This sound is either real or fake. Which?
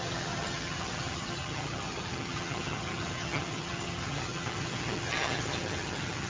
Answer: fake